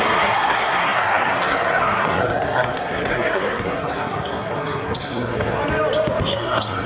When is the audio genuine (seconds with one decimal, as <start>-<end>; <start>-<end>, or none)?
5.6-6.2